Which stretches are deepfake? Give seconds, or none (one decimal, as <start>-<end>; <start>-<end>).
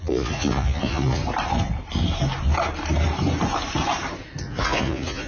0.0-1.2; 4.4-5.3